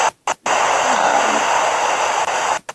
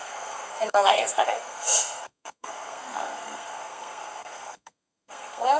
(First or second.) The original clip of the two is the first